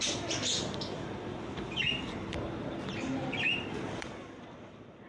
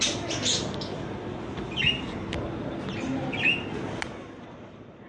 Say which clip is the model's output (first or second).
first